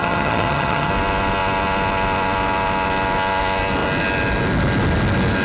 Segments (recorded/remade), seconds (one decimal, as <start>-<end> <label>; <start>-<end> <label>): 0.0-0.9 remade; 0.9-5.4 recorded